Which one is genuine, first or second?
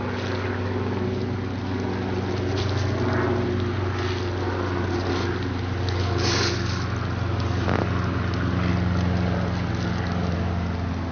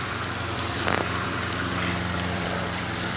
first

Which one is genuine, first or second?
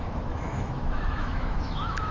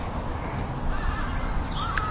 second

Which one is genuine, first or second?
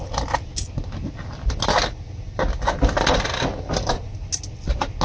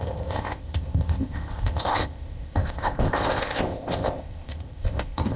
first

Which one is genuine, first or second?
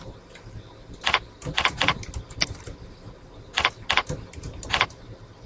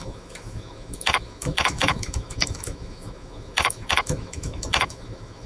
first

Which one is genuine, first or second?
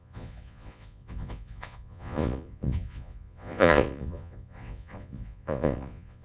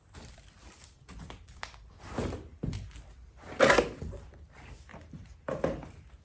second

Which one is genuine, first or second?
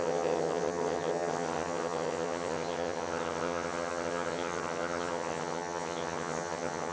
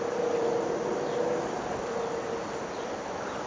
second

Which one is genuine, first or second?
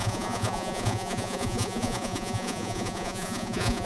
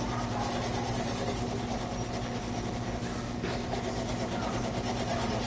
second